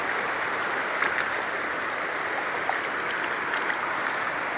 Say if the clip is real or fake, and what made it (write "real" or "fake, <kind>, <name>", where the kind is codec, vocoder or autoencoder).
real